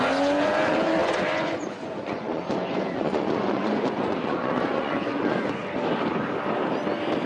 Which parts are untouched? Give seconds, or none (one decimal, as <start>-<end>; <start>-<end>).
5.6-7.3